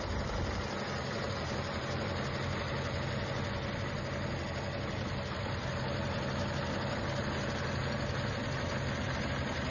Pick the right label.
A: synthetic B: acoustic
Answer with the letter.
B